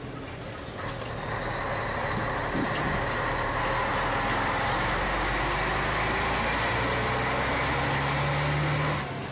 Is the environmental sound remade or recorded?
recorded